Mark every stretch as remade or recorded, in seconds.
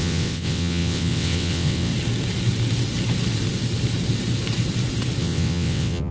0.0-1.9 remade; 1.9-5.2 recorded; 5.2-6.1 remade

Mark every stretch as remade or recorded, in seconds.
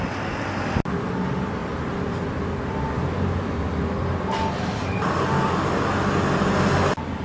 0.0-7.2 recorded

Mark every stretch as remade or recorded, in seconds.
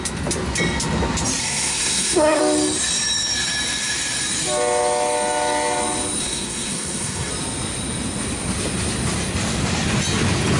0.0-1.4 recorded; 1.4-2.4 remade; 2.4-6.2 recorded; 6.2-7.3 remade; 7.3-10.6 recorded